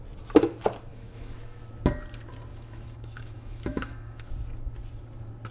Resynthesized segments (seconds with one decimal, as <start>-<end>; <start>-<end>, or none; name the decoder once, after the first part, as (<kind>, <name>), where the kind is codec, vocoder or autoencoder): 0.9-1.6 (autoencoder, DAC-VAE); 2.5-4.3